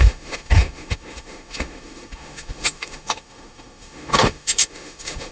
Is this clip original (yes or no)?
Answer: no